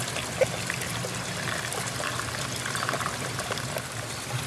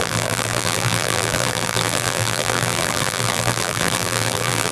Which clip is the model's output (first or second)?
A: second